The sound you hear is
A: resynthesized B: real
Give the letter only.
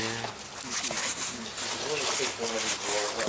B